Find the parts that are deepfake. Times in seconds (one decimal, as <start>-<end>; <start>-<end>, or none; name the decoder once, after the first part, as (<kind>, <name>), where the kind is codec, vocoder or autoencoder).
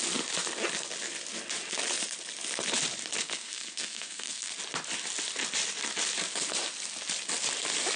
3.2-4.5 (codec, SNAC)